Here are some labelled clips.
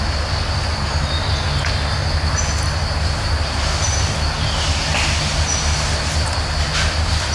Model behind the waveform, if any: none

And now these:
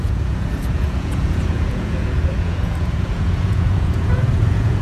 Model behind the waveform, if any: vocoder, Vocos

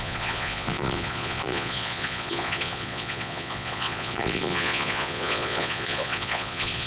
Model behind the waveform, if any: vocoder, Vocos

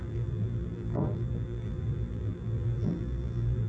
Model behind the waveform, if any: vocoder, BigVGAN v2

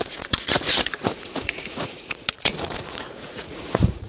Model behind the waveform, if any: vocoder, Vocos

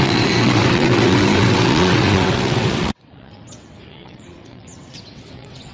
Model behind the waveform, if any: vocoder, WaveNeXt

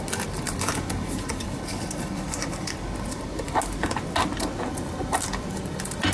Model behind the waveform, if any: none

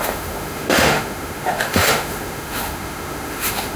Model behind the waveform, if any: autoencoder, DAC-VAE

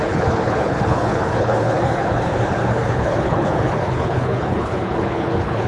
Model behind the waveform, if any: codec, HILCodec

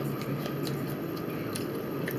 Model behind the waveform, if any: none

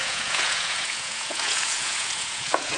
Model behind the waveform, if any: vocoder, Vocos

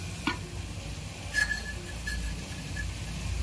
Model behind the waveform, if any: none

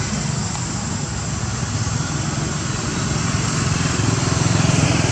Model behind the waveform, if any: none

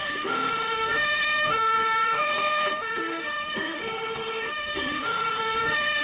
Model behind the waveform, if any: autoencoder, DAC-VAE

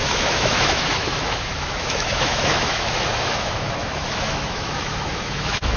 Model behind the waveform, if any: autoencoder, DAC-VAE